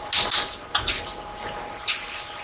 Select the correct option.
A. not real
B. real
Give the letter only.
B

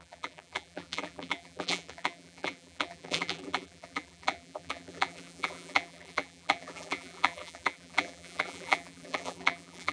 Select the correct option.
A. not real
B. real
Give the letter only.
A